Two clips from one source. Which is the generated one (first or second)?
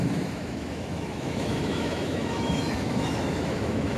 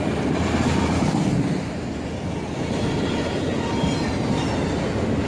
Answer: first